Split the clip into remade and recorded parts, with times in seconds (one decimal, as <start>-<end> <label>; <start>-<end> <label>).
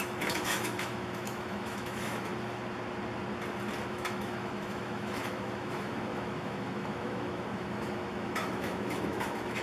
0.0-2.3 remade; 2.3-3.9 recorded; 3.9-9.6 remade